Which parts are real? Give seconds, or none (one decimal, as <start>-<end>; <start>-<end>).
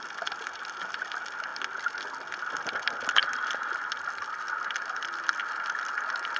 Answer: 0.0-6.4